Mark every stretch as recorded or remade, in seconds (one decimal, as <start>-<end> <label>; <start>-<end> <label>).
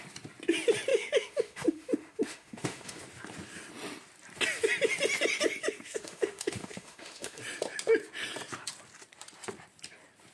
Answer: 0.0-0.9 recorded; 0.9-3.0 remade; 3.0-5.7 recorded; 5.7-7.4 remade; 7.4-10.3 recorded